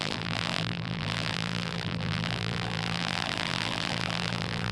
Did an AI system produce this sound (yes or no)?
yes